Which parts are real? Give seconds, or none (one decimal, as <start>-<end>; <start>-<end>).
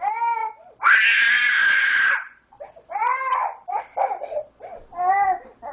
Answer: 0.0-0.4; 3.8-5.7